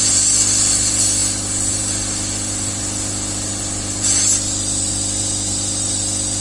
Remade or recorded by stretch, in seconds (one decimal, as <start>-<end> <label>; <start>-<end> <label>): 0.0-6.4 recorded